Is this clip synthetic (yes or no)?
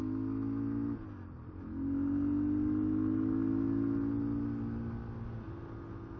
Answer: no